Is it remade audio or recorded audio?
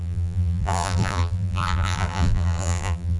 remade